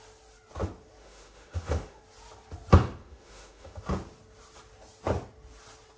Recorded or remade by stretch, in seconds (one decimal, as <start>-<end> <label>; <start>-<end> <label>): 0.0-1.0 recorded; 1.0-2.0 remade; 2.0-3.0 recorded; 3.0-3.8 remade; 3.8-6.0 recorded